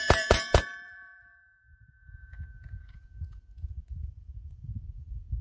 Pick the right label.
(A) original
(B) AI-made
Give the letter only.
B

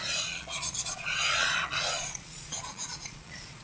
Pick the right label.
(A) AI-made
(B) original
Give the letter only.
A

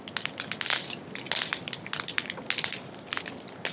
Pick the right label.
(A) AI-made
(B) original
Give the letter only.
B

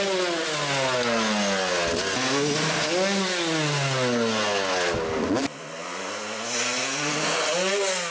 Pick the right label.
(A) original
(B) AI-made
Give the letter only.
A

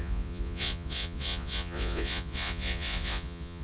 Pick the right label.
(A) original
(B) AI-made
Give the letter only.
B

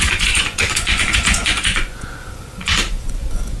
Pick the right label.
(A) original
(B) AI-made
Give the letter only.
B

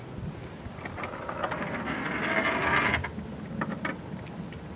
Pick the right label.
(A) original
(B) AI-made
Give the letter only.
A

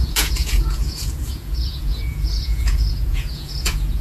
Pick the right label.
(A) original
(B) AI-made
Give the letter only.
B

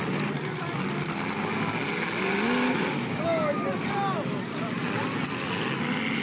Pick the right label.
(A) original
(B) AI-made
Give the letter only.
A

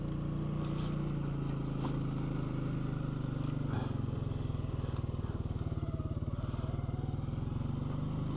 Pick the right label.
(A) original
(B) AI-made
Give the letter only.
A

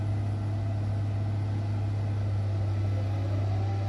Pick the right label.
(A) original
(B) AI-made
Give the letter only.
A